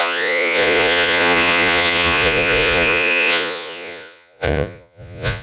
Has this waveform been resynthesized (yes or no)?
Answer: yes